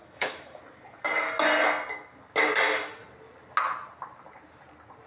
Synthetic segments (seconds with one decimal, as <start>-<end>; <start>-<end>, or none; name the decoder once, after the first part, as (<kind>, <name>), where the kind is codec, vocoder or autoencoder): 0.0-0.6 (autoencoder, DAC-VAE)